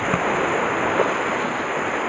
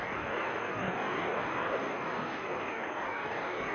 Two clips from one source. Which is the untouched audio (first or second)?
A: first